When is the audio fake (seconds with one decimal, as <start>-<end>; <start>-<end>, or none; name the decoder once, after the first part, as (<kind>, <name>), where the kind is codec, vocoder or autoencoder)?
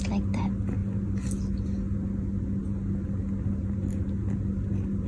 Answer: none